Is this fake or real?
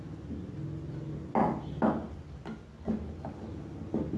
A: real